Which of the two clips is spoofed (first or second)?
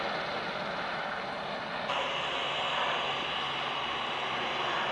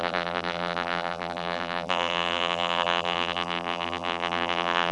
second